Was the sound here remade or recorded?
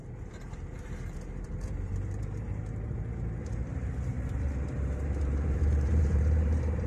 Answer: remade